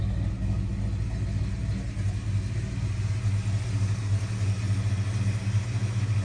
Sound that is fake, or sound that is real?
real